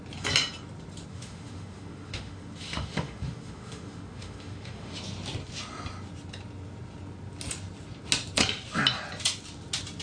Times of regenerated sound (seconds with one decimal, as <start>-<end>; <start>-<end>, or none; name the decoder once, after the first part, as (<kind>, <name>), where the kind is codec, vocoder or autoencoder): 1.1-5.0 (autoencoder, DAC-VAE)